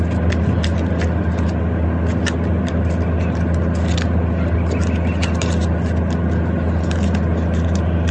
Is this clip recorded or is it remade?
recorded